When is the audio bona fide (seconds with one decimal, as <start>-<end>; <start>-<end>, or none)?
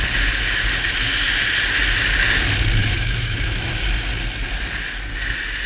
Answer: 0.0-2.8; 3.7-5.7